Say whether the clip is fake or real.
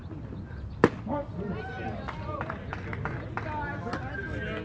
real